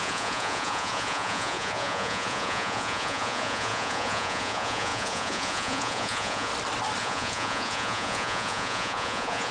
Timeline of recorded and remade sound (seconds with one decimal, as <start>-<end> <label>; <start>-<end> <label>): 0.0-6.5 remade; 6.5-7.0 recorded; 7.0-9.5 remade